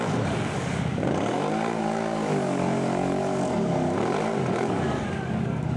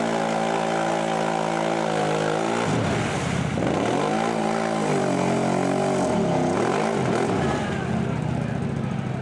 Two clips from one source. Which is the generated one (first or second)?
first